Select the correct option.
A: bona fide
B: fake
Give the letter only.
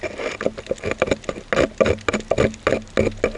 A